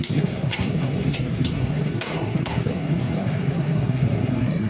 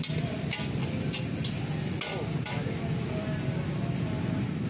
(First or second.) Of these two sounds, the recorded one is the second